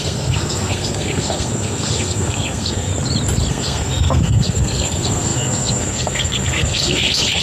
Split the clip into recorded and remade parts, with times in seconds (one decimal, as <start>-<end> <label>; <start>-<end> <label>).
0.0-2.9 remade; 2.9-3.5 recorded; 3.5-7.4 remade